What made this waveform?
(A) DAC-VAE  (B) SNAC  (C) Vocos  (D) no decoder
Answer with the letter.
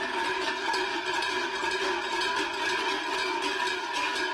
D